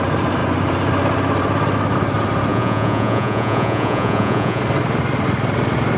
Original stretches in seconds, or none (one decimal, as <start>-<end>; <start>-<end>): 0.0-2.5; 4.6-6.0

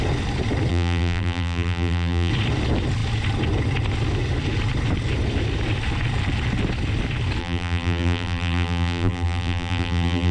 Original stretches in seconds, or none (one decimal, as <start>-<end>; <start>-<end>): 0.0-0.7; 2.3-7.4

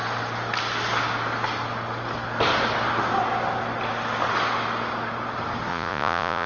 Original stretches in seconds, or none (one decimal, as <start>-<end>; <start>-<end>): 0.0-5.7

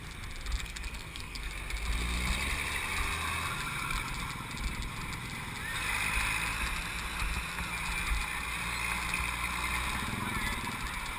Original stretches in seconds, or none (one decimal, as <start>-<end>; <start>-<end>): 0.0-0.6; 1.5-11.2

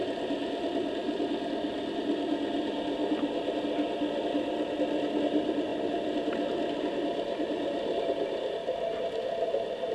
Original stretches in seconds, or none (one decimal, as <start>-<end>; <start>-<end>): 0.0-9.9

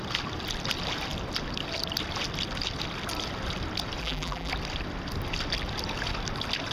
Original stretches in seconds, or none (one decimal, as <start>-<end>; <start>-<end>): 0.0-4.0; 4.5-6.7